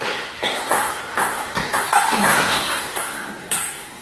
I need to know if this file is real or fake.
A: fake